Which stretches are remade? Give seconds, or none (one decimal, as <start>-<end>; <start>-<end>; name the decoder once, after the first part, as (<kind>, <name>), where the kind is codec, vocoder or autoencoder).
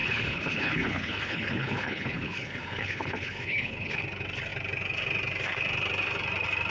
0.0-4.0 (codec, HILCodec)